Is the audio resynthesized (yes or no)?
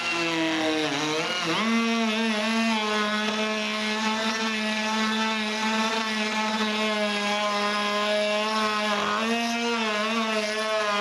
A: no